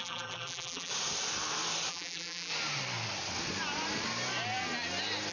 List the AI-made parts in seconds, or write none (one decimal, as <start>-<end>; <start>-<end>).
0.0-0.9; 1.9-2.5